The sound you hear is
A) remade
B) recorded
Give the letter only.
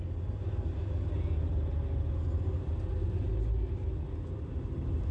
B